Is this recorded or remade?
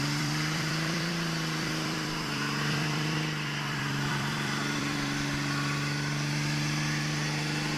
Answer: remade